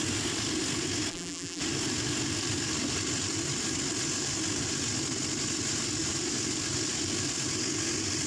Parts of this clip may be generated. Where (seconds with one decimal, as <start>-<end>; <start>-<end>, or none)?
1.1-1.6